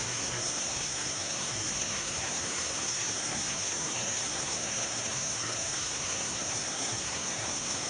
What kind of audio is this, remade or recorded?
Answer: remade